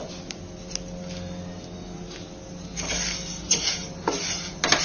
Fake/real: real